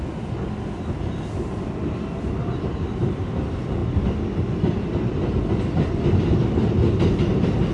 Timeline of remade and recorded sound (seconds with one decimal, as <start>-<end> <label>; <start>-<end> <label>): 0.0-7.7 recorded